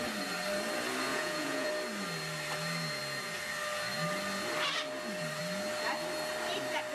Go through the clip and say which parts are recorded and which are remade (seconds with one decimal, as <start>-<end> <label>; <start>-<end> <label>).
0.0-1.1 recorded; 1.1-1.7 remade; 1.7-6.9 recorded